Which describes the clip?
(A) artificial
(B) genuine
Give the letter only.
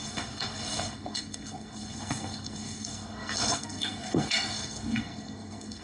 A